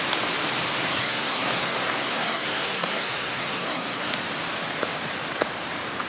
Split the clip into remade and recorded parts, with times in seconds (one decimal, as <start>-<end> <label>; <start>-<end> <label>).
0.0-0.9 recorded; 0.9-4.1 remade; 4.1-6.1 recorded